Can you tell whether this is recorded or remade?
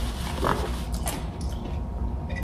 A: recorded